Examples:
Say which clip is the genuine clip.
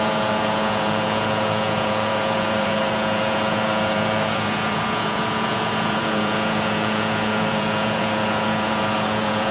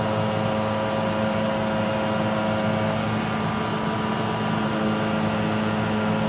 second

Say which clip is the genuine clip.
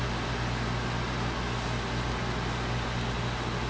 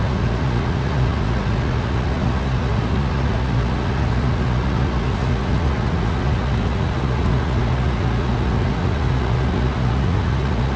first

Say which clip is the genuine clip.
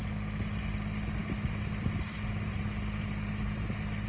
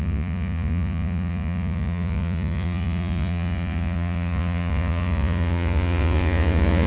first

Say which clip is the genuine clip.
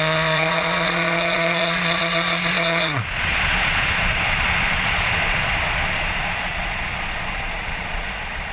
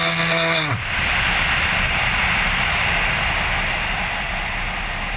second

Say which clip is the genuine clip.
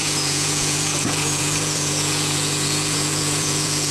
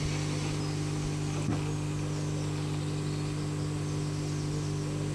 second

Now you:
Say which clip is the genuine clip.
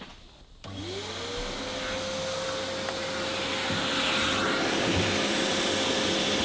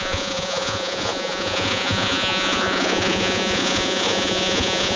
first